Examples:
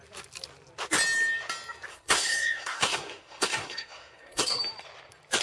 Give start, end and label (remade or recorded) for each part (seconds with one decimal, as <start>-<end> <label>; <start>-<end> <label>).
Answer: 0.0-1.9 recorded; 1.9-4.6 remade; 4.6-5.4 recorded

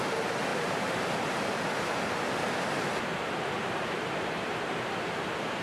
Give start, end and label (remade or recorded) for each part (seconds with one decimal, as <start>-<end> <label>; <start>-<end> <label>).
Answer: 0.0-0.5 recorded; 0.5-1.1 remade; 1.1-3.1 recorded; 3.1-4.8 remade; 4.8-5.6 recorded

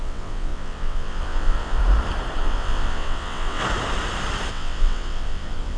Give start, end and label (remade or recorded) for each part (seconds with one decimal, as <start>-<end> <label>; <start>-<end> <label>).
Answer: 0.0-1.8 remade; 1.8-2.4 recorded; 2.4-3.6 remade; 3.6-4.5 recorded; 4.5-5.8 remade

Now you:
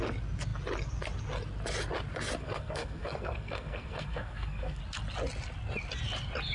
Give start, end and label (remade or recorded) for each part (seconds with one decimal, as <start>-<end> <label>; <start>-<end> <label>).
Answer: 0.0-2.4 recorded; 2.4-4.8 remade; 4.8-6.5 recorded